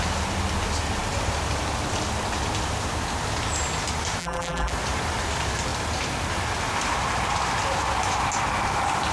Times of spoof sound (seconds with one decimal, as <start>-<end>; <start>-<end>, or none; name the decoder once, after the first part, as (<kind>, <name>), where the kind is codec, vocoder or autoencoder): 4.2-4.7 (vocoder, BigVGAN v2)